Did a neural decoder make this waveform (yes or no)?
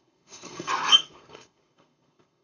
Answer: yes